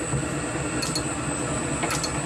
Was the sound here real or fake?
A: real